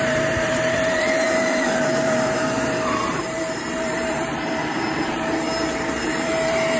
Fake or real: fake